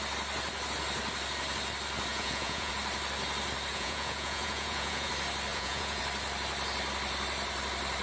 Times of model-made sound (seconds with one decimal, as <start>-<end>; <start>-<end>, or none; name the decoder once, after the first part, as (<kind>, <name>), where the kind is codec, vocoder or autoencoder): 2.1-2.7 (vocoder, Vocos); 3.7-5.1; 5.5-6.0